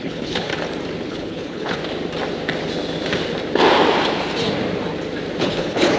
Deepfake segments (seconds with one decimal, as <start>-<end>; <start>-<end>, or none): 0.0-0.5; 1.1-1.8; 5.4-6.0